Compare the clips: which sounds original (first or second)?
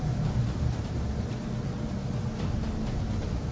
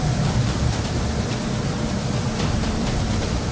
first